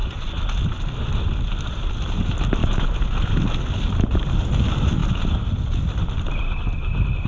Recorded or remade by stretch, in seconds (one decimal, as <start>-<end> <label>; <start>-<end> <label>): 0.0-7.3 recorded